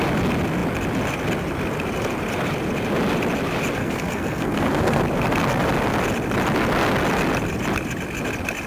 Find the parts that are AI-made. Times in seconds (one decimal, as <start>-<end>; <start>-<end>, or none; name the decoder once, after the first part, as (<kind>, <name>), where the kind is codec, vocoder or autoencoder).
3.8-5.0 (codec, SNAC)